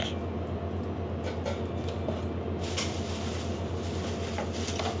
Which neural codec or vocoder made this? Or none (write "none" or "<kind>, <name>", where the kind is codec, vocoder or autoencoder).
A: none